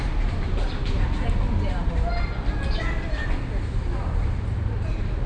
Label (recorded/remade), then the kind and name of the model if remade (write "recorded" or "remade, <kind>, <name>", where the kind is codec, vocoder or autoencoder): recorded